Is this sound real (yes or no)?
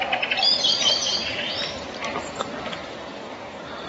no